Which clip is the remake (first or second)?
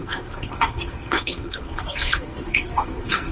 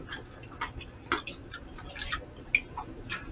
first